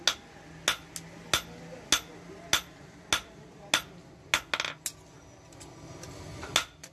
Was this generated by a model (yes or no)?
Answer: no